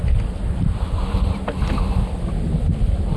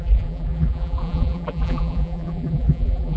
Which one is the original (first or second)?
first